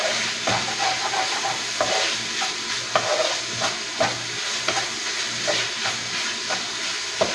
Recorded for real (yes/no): yes